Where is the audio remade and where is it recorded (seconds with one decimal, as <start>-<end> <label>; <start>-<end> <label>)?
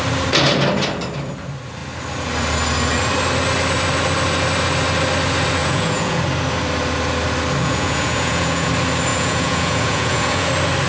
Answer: 0.0-5.6 recorded; 5.6-6.2 remade; 6.2-7.6 recorded; 7.6-8.7 remade; 8.7-9.1 recorded; 9.1-10.5 remade; 10.5-10.9 recorded